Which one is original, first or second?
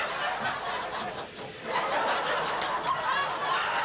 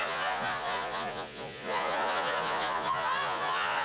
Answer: first